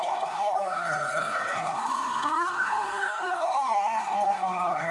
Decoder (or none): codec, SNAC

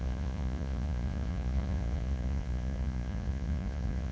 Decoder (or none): vocoder, Vocos